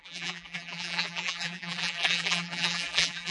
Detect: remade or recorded remade